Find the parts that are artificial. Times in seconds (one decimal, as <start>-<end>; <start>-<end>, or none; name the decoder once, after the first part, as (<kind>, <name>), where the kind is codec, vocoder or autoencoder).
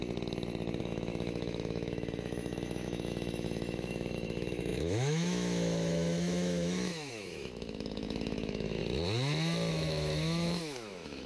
0.8-8.8 (autoencoder, DAC-VAE); 9.7-11.3